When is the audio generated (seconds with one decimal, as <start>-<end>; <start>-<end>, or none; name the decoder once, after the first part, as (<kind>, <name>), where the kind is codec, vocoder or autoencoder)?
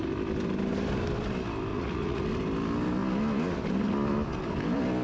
1.7-2.2 (vocoder, Vocos)